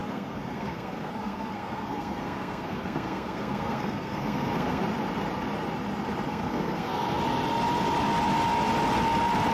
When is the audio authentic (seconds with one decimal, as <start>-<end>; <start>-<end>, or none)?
4.8-6.3; 7.2-9.5